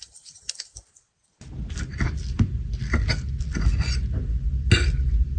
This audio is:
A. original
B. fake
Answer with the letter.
A